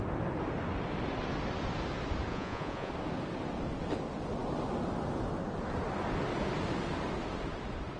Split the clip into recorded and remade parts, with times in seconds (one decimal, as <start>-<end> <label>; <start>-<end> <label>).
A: 0.0-2.3 recorded; 2.3-2.9 remade; 2.9-8.0 recorded